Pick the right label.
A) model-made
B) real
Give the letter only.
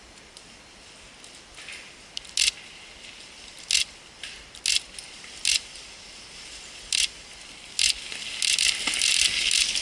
B